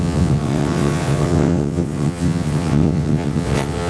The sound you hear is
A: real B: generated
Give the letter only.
B